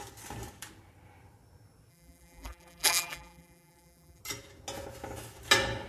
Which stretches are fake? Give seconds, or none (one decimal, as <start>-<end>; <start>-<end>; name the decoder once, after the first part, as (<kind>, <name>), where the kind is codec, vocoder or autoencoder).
1.9-4.2 (vocoder, BigVGAN v2)